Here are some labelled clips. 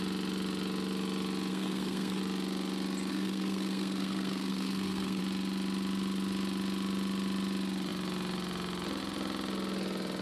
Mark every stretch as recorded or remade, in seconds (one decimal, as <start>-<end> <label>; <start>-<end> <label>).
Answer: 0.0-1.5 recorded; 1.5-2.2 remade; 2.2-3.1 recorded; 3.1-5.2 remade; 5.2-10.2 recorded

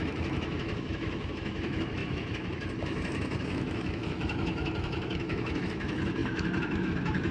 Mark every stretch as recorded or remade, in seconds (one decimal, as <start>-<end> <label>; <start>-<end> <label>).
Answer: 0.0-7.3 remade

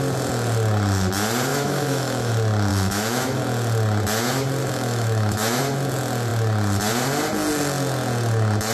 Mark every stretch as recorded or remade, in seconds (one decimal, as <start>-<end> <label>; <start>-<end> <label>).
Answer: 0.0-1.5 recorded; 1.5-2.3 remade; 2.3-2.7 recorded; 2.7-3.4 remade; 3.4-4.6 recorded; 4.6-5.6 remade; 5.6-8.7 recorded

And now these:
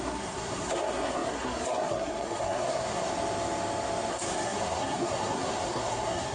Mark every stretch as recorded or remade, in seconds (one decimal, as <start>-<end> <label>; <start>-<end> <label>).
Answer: 0.0-3.1 remade; 3.1-4.1 recorded; 4.1-6.3 remade

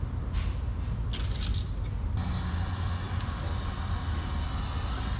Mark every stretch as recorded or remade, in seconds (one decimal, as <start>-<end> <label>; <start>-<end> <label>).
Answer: 0.0-5.2 recorded